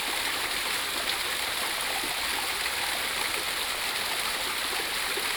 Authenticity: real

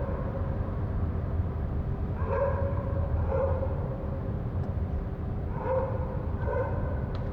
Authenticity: fake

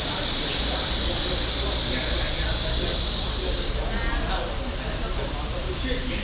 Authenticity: real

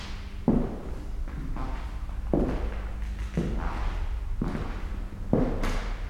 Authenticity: real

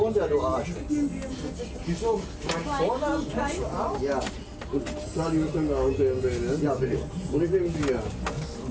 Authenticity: real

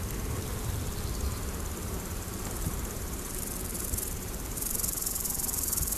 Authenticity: fake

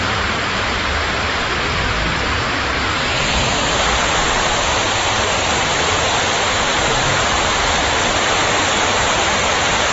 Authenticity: fake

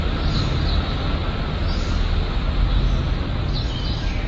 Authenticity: real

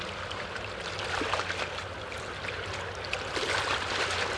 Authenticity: real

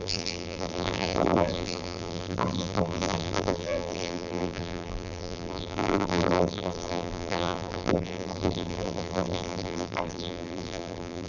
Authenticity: fake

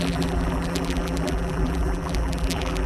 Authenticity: fake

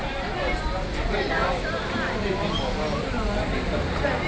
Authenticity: real